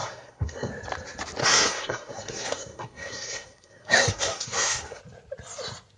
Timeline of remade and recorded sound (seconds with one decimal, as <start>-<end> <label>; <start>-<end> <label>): 0.0-0.7 remade; 0.7-1.4 recorded; 1.4-5.0 remade; 5.0-6.0 recorded